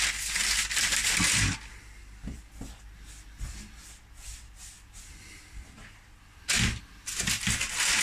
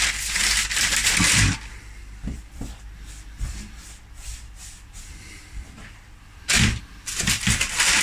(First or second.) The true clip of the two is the first